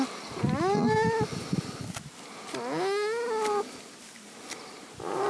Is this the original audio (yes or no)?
yes